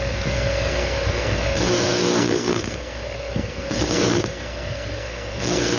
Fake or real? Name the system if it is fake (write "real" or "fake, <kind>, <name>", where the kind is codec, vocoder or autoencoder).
fake, codec, SNAC